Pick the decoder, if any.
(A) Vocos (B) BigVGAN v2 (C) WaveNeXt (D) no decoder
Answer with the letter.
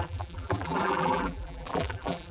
B